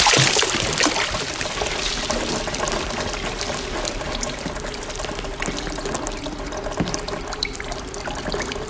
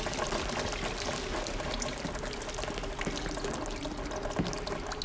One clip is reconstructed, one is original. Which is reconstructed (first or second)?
first